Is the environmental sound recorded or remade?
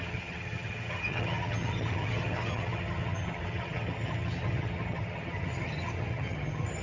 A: remade